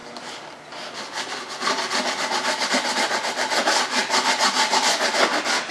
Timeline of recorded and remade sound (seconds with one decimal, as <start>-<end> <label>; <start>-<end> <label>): 0.0-5.7 recorded